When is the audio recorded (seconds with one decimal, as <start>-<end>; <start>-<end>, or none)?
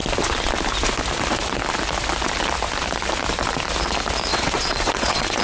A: 0.0-4.3